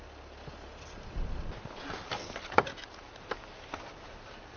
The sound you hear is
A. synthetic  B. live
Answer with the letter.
B